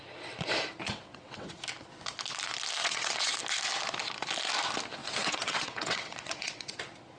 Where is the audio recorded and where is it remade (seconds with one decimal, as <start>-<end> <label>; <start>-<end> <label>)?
0.0-0.8 recorded; 0.8-1.5 remade; 1.5-2.8 recorded; 2.8-3.3 remade; 3.3-5.0 recorded; 5.0-6.8 remade; 6.8-7.2 recorded